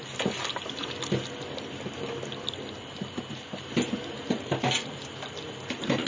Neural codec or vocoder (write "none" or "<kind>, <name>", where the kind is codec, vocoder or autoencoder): none